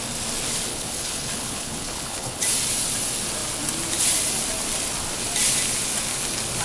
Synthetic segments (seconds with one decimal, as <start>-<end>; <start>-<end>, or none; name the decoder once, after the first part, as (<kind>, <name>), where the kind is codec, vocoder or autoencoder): 0.7-2.4 (codec, HILCodec)